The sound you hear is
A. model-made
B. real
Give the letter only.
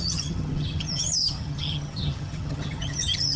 A